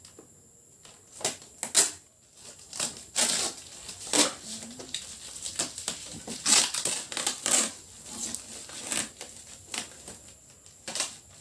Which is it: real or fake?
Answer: real